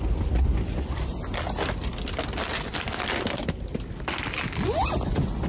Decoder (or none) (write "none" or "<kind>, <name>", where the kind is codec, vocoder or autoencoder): none